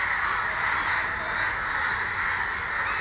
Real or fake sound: real